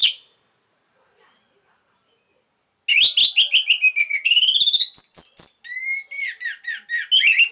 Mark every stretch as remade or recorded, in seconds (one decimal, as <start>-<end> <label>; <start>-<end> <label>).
0.0-0.9 remade; 0.9-7.5 recorded